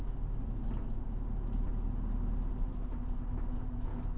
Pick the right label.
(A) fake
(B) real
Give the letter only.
B